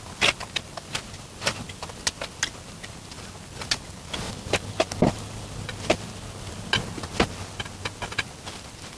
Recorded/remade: recorded